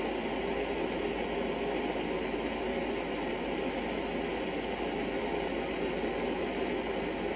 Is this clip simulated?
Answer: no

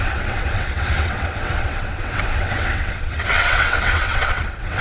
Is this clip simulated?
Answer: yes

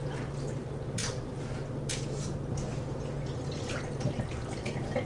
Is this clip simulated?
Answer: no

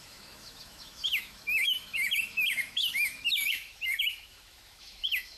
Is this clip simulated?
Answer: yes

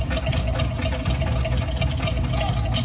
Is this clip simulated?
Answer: no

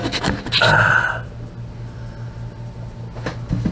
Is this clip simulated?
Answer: no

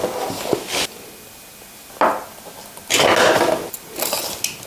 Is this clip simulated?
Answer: no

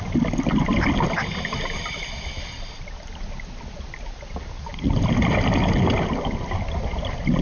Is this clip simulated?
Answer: no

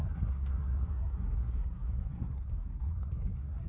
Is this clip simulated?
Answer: yes